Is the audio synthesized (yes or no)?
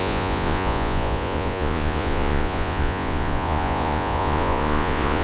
yes